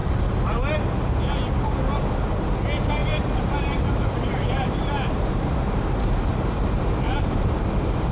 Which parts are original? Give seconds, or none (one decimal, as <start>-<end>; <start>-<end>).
0.0-3.0